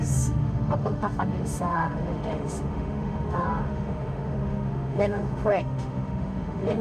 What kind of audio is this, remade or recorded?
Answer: remade